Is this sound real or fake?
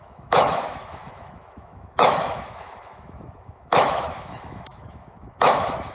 fake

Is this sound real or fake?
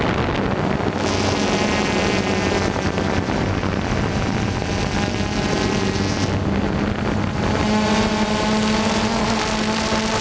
real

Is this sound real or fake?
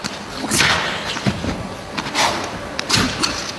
real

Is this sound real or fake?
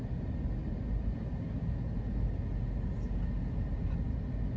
real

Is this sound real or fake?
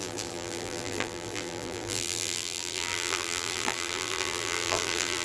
fake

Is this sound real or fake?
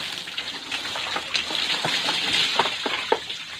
real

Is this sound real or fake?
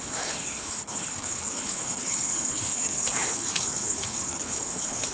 fake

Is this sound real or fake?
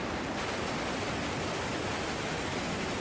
real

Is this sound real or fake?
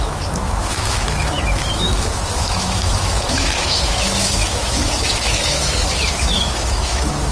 fake